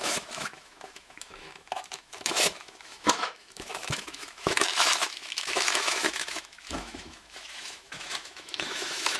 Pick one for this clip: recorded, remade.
remade